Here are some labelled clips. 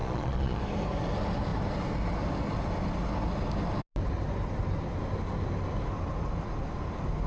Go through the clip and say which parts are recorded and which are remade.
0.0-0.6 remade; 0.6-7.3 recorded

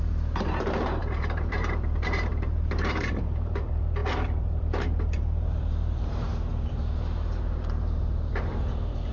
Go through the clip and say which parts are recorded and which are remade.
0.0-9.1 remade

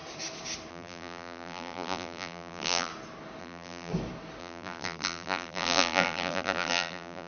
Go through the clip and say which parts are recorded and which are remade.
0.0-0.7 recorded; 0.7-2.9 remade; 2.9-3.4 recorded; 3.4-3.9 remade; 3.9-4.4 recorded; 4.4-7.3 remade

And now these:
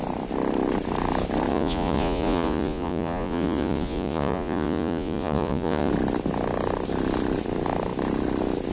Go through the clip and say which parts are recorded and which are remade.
0.0-1.5 recorded; 1.5-5.9 remade; 5.9-8.7 recorded